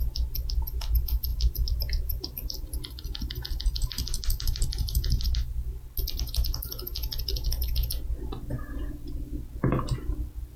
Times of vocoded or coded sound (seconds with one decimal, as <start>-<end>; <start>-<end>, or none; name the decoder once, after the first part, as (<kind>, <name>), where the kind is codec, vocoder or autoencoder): 1.3-5.7 (vocoder, BigVGAN v2)